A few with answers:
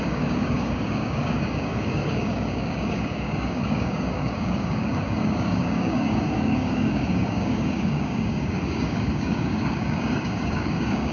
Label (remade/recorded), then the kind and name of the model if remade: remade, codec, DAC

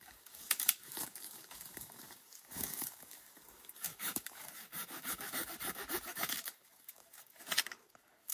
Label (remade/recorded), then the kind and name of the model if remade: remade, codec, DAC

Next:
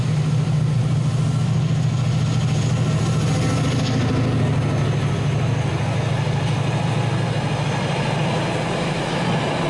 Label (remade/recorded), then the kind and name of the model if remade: recorded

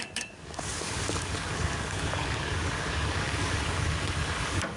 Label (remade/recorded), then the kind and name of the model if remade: remade, codec, DAC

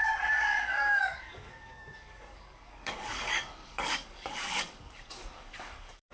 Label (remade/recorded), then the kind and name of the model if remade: remade, codec, DAC